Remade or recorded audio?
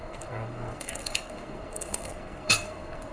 remade